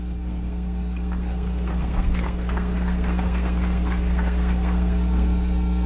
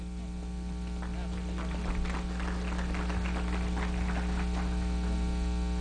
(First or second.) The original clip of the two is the second